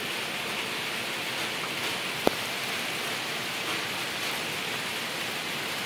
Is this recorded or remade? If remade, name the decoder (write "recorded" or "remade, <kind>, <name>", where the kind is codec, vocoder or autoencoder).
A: recorded